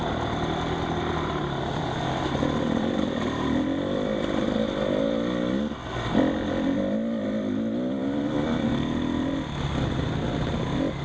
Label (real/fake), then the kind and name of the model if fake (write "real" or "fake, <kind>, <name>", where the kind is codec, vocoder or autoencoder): real